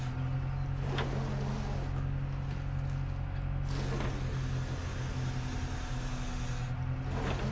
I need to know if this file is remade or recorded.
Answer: recorded